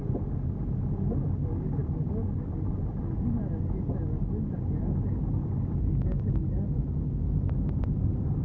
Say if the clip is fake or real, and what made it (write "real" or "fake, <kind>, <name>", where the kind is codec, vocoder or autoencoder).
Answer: real